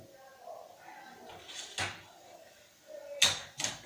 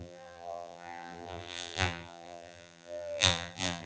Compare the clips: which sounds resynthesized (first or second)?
second